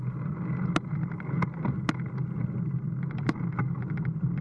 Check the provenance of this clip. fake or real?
real